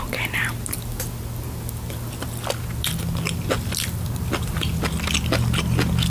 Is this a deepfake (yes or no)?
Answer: no